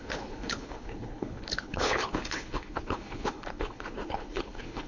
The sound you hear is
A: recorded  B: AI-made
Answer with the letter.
B